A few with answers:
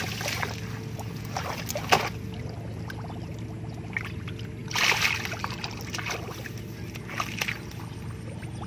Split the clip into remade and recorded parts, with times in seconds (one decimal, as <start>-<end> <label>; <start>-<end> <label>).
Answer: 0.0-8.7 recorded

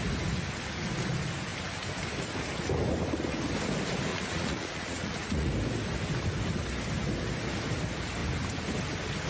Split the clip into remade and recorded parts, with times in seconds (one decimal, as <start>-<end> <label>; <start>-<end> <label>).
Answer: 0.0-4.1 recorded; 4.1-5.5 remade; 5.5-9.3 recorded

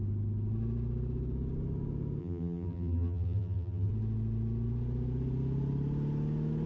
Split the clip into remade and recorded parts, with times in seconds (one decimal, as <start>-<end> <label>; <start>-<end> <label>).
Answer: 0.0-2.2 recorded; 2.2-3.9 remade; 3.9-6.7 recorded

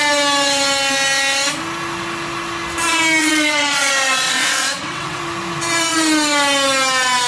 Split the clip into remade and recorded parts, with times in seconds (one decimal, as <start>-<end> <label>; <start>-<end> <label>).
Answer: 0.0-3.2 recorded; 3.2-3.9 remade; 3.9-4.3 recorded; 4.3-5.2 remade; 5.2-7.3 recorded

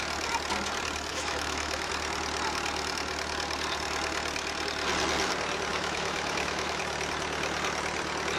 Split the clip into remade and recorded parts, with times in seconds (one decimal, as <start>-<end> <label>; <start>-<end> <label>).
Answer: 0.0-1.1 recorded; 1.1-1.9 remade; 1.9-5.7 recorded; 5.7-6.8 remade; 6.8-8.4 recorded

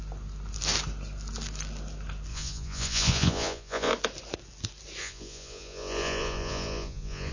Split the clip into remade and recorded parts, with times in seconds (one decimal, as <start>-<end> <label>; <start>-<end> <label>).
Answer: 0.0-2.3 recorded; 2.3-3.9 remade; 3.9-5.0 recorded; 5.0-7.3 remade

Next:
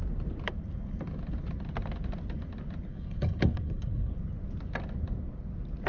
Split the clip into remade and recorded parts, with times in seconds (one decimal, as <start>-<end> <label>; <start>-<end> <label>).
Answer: 0.0-2.9 recorded; 2.9-4.1 remade; 4.1-5.9 recorded